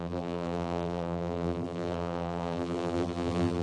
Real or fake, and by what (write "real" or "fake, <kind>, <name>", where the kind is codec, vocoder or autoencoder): fake, vocoder, BigVGAN v2